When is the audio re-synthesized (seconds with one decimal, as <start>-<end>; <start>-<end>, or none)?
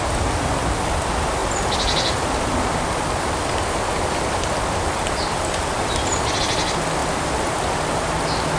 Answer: 1.4-6.4